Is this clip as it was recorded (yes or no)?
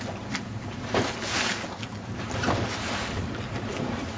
yes